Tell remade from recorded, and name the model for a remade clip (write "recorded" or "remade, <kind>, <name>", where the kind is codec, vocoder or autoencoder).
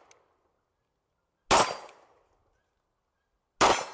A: recorded